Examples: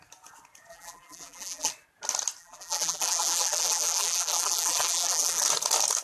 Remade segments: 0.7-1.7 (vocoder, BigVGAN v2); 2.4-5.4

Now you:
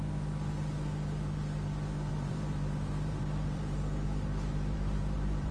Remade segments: 2.1-5.5 (vocoder, BigVGAN v2)

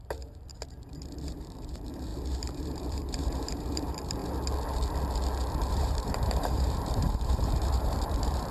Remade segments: 0.0-0.5 (vocoder, BigVGAN v2); 1.2-4.2; 5.7-8.5

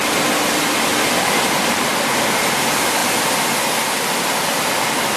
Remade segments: 3.0-3.6 (vocoder, BigVGAN v2)

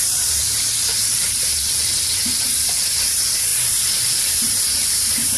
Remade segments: 0.0-0.4 (vocoder, BigVGAN v2); 1.0-5.4

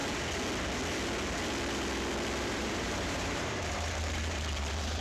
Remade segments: 2.4-5.0 (vocoder, BigVGAN v2)

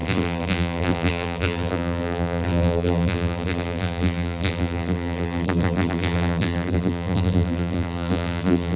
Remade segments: 0.0-8.8 (vocoder, BigVGAN v2)